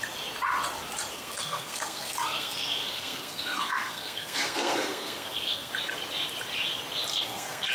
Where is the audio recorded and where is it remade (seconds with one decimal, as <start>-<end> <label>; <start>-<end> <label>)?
0.0-1.1 recorded; 1.1-5.7 remade; 5.7-7.1 recorded; 7.1-7.7 remade